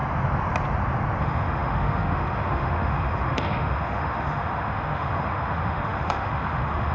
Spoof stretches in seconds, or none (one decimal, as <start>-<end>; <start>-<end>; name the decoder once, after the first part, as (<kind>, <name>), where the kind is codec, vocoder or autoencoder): 1.2-6.9 (autoencoder, DAC-VAE)